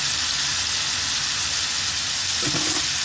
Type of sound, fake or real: real